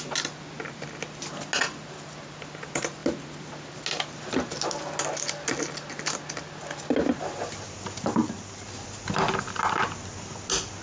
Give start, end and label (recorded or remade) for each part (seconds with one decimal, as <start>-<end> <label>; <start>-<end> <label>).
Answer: 0.0-10.8 recorded